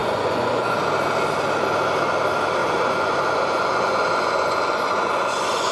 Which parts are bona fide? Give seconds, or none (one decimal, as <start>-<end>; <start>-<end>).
0.8-2.6